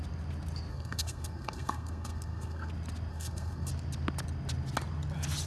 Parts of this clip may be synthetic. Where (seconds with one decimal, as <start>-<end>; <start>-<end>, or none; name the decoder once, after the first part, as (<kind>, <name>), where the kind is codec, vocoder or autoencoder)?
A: 0.7-2.7 (codec, SNAC); 3.1-3.7